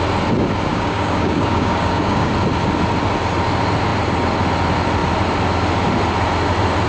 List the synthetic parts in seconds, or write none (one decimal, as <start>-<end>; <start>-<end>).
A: 0.7-2.3